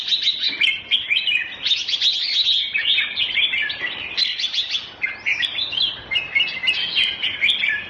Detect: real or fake real